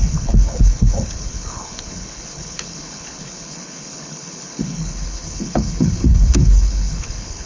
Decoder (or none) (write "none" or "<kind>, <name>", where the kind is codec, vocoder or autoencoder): codec, HILCodec